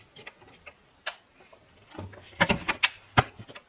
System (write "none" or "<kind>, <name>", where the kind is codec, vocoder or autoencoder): none